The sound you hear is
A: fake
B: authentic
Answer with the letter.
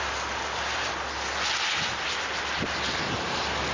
B